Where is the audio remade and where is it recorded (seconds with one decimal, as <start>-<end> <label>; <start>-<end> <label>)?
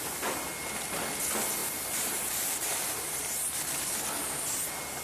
0.0-1.6 recorded; 1.6-2.3 remade; 2.3-2.7 recorded; 2.7-3.2 remade; 3.2-5.0 recorded